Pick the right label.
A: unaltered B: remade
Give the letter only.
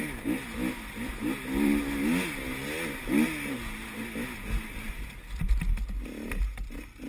A